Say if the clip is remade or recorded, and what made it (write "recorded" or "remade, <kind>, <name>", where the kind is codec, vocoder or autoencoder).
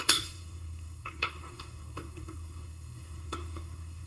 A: remade, codec, SNAC